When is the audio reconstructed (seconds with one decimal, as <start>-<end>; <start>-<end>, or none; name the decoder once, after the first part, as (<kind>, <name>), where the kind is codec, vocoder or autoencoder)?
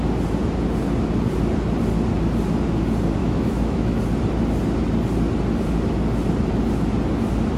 3.2-4.0 (autoencoder, DAC-VAE)